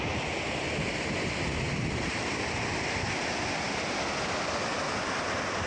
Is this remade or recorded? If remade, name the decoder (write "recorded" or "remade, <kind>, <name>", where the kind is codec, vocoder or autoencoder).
recorded